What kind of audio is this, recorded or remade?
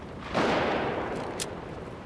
recorded